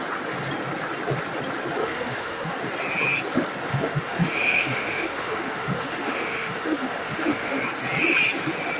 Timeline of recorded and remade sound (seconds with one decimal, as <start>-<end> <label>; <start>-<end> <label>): 0.0-1.8 recorded; 1.8-2.6 remade; 2.6-3.7 recorded; 3.7-7.6 remade; 7.6-8.8 recorded